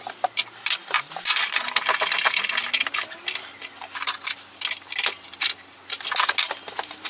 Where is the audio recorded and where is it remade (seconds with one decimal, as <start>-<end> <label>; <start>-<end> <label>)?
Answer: 0.0-7.1 recorded